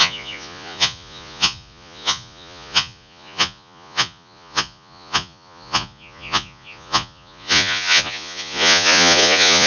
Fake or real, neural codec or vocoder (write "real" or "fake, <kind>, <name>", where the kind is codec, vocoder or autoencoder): fake, vocoder, Vocos